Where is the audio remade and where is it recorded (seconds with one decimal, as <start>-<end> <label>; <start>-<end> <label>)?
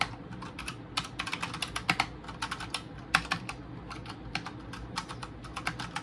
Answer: 0.0-6.0 recorded